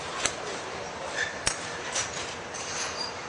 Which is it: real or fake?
fake